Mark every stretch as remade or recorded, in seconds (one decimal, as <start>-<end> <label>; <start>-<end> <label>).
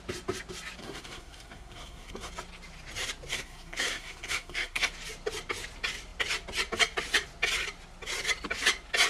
0.0-0.8 recorded; 0.8-2.3 remade; 2.3-3.3 recorded; 3.3-4.9 remade; 4.9-9.1 recorded